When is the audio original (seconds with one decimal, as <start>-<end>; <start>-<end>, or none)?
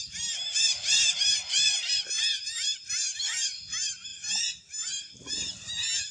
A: 0.0-6.1